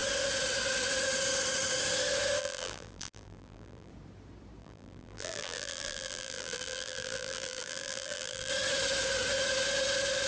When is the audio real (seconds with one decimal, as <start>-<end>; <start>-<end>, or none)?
0.0-2.4; 3.9-4.6; 8.5-10.3